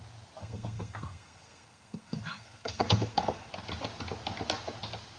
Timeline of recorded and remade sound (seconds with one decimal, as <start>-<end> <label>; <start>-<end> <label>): 0.0-0.4 recorded; 0.4-3.5 remade; 3.5-5.2 recorded